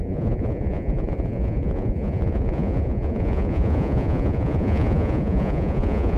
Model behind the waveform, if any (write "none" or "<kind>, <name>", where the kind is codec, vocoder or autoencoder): vocoder, Vocos